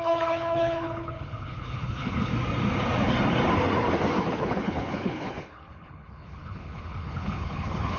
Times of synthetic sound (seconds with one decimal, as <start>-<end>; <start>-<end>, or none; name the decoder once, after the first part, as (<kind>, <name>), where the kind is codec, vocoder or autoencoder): 0.0-2.3 (codec, HILCodec); 4.2-8.0